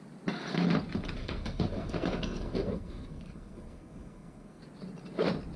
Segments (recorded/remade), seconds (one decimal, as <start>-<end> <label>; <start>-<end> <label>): 0.0-1.2 recorded; 1.2-4.6 remade; 4.6-5.6 recorded